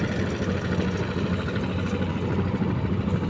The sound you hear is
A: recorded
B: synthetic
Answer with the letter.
A